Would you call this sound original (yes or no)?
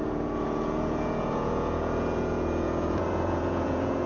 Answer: no